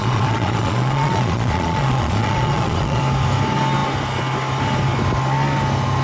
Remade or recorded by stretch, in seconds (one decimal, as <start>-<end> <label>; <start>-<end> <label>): 0.0-3.0 remade; 3.0-6.0 recorded